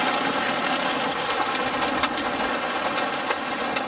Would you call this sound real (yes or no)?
yes